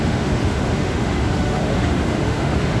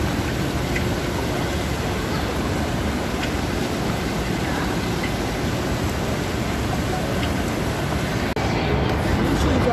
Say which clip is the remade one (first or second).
first